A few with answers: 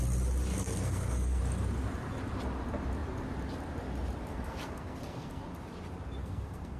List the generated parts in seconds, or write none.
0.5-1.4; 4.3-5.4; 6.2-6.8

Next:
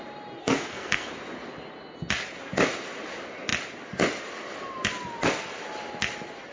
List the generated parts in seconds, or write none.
0.4-1.1

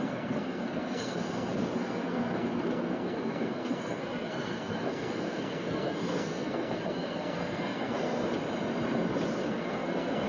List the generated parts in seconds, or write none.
0.0-8.2; 9.4-10.3

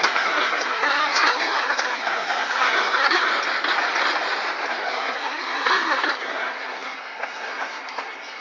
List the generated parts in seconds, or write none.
0.0-3.3; 4.7-8.4

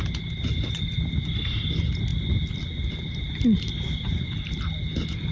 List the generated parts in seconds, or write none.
none

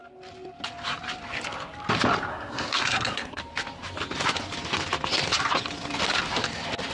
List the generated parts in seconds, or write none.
2.3-3.4